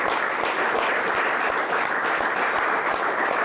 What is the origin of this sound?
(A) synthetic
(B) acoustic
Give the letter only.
B